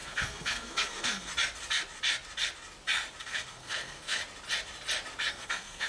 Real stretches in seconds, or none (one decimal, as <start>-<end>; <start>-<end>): 1.3-3.2; 4.2-5.3